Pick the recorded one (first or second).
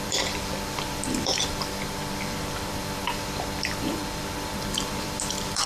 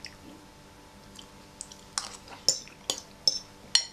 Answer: second